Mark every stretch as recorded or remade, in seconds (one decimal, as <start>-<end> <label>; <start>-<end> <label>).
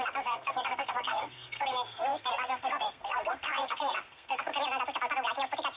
0.0-4.5 remade; 4.5-5.8 recorded